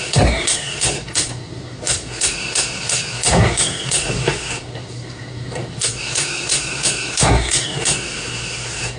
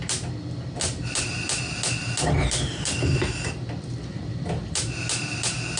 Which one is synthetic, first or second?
first